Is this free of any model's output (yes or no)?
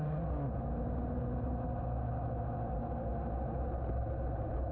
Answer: yes